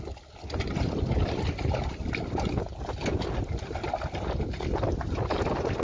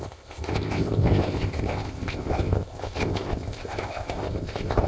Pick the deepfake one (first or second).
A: second